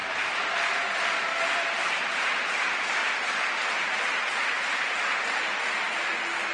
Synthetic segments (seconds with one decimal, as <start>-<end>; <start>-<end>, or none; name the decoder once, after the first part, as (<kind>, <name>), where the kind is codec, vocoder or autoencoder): 1.3-2.0 (vocoder, BigVGAN v2); 3.0-5.0